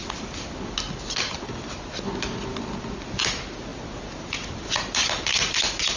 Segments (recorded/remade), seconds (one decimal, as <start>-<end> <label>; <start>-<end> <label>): 0.0-6.0 recorded